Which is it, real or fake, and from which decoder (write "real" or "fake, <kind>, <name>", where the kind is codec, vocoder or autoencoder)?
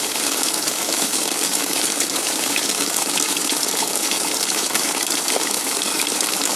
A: fake, codec, DAC